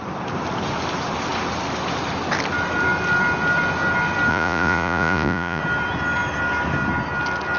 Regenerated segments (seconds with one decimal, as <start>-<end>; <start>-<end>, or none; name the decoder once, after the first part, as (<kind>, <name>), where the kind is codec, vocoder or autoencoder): 4.3-5.6 (vocoder, Vocos)